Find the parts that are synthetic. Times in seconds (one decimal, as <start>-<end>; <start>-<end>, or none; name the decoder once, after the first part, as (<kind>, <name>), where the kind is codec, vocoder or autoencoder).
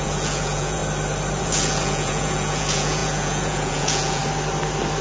0.0-0.8 (vocoder, Vocos); 1.4-4.2